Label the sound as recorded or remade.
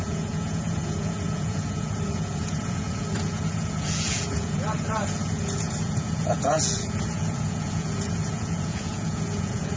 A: remade